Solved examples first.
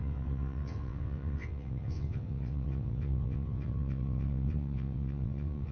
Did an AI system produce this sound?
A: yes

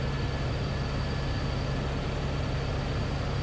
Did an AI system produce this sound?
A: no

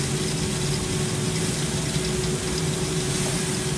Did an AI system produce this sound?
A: no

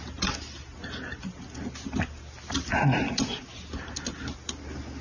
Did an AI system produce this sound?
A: no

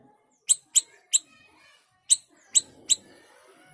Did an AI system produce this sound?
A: no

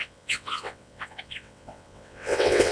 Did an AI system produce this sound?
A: yes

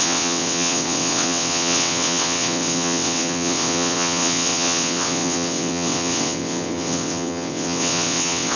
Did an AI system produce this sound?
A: yes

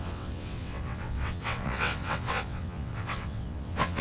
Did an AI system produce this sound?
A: yes